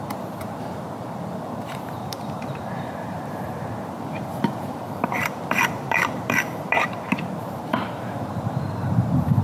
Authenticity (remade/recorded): remade